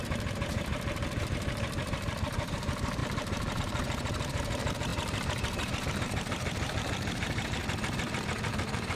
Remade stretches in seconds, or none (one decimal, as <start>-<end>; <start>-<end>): 0.0-7.6; 8.2-9.0